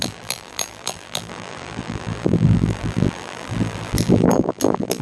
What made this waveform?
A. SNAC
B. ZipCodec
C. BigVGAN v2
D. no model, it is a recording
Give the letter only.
C